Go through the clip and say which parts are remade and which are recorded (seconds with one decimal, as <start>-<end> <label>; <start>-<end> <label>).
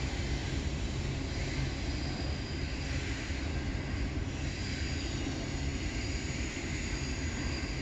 0.0-7.8 recorded